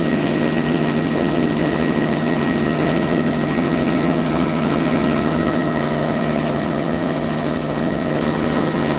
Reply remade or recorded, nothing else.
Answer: remade